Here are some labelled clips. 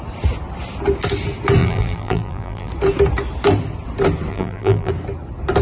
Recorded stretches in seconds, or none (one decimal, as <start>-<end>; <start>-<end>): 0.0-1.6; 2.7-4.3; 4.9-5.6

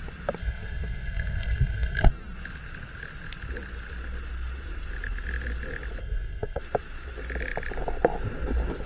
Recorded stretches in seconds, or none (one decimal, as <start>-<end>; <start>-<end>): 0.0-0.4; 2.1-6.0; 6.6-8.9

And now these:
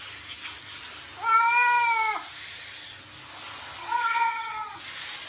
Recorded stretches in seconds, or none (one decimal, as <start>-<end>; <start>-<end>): 0.0-3.8; 4.8-5.3

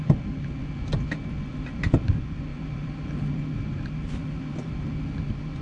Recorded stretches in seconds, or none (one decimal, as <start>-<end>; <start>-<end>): 0.0-5.6

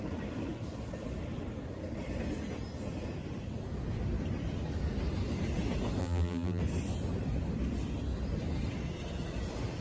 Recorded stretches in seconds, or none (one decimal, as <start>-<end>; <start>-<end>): 0.0-6.0; 6.6-9.8